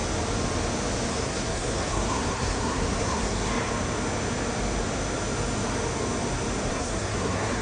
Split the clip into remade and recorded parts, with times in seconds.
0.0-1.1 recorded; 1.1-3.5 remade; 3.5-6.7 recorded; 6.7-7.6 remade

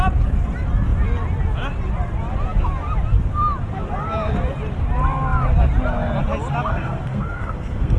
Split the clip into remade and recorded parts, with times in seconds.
0.0-6.7 recorded; 6.7-8.0 remade

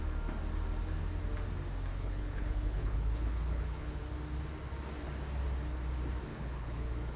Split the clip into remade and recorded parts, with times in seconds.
0.0-1.9 recorded; 1.9-4.0 remade; 4.0-6.3 recorded; 6.3-7.2 remade

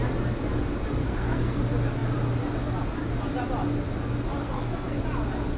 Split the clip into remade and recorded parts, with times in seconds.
0.0-1.0 recorded; 1.0-1.6 remade; 1.6-4.4 recorded; 4.4-5.0 remade; 5.0-5.6 recorded

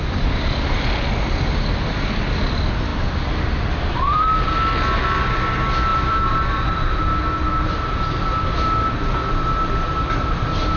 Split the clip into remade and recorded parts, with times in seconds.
0.0-5.9 recorded; 5.9-7.0 remade; 7.0-10.8 recorded

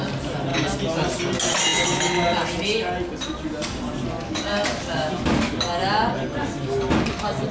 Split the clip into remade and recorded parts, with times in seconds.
0.0-7.5 recorded

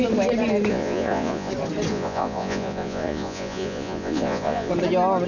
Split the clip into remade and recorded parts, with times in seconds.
0.0-0.7 recorded; 0.7-1.5 remade; 1.5-1.9 recorded; 1.9-4.7 remade; 4.7-5.3 recorded